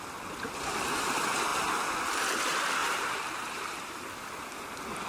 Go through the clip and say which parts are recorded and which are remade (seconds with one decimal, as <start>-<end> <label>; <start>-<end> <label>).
0.0-2.8 recorded; 2.8-4.2 remade; 4.2-5.1 recorded